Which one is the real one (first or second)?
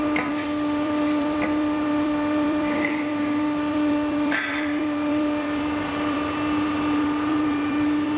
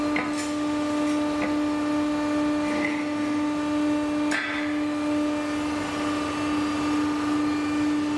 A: second